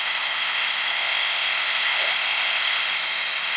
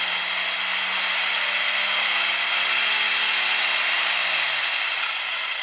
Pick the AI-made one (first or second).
first